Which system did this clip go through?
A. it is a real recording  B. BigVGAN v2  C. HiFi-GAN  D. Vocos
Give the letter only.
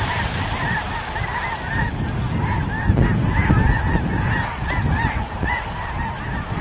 A